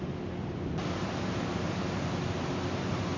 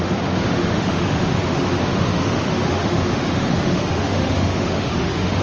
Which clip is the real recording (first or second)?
first